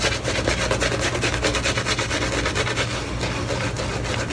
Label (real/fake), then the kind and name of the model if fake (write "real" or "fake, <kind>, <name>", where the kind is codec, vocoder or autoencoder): real